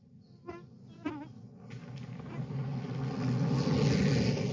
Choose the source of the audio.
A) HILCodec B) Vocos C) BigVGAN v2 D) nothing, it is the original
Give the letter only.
D